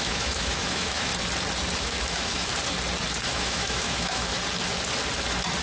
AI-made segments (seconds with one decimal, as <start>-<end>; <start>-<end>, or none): 0.0-1.1; 1.8-2.5; 3.3-4.3